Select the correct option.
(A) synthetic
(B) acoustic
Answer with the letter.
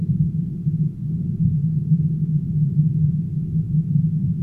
B